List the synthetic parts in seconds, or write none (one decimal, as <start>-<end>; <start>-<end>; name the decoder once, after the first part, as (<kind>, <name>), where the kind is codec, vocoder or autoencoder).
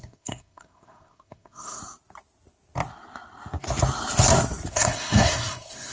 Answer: 0.0-1.8 (codec, SNAC); 4.7-5.9